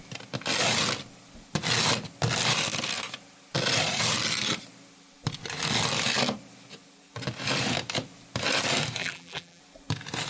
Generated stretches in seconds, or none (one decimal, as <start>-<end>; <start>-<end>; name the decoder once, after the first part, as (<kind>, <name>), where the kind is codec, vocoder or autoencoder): 9.0-9.6 (vocoder, BigVGAN v2)